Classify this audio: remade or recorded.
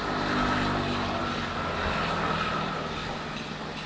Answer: recorded